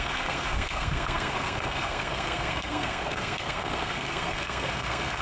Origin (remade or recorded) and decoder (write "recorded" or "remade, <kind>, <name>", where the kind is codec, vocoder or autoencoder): remade, codec, SNAC